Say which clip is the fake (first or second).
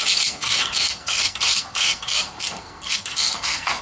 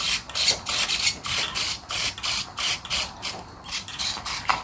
first